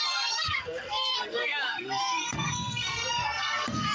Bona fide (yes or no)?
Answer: no